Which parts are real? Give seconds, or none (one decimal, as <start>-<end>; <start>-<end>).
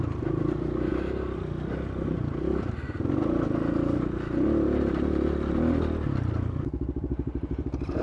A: 0.0-8.0